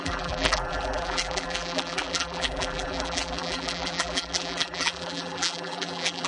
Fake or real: fake